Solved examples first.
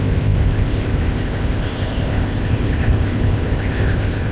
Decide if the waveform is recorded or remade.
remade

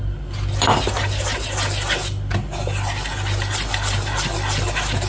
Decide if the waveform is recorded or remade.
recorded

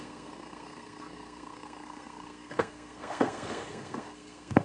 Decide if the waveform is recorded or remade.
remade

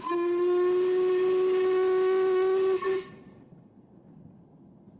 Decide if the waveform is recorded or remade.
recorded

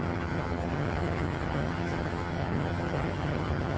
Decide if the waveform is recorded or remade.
remade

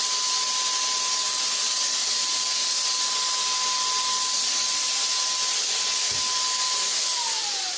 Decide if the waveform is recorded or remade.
recorded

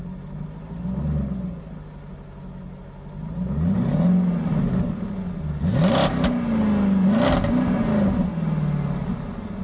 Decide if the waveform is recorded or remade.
recorded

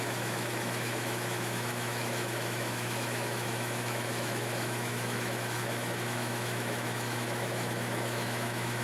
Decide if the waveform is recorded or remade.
remade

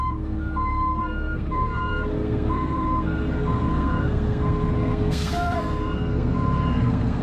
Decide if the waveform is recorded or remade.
remade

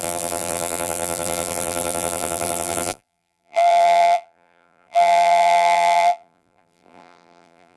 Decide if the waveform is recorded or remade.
remade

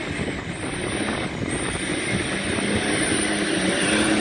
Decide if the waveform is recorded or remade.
recorded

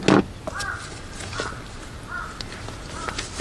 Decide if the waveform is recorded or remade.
recorded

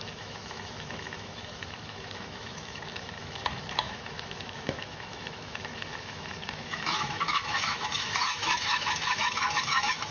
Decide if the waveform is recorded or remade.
remade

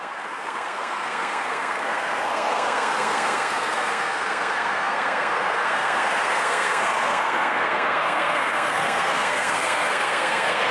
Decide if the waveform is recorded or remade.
remade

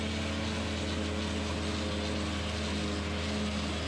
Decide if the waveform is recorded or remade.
recorded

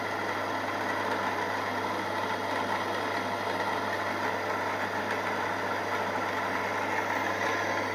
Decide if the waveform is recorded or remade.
recorded